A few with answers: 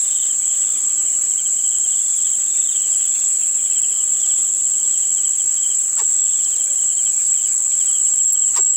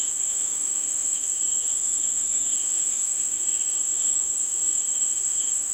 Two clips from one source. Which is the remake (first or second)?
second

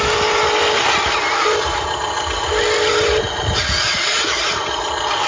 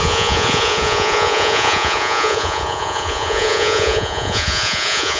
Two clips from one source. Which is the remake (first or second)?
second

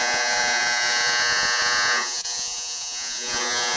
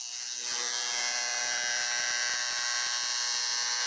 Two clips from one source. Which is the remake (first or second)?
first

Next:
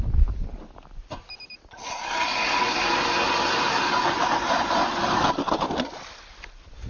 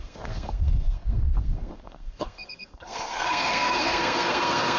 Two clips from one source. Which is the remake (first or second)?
second